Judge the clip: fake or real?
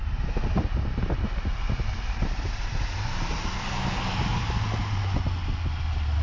real